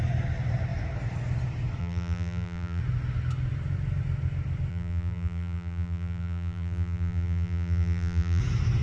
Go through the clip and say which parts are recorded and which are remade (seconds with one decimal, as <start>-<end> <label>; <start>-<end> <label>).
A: 0.0-1.8 recorded; 1.8-2.8 remade; 2.8-4.7 recorded; 4.7-8.4 remade; 8.4-8.8 recorded